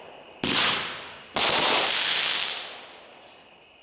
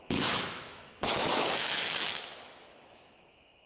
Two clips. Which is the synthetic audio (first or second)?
second